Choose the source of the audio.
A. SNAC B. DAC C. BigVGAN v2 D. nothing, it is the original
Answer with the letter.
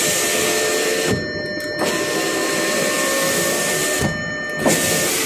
D